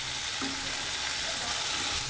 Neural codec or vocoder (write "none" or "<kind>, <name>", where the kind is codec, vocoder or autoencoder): none